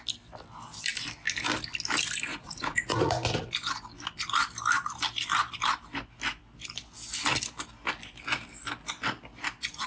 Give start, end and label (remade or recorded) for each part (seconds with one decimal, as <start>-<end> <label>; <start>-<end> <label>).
0.0-2.3 recorded; 2.3-3.1 remade; 3.1-9.9 recorded